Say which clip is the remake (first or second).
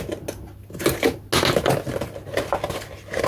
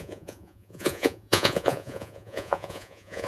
second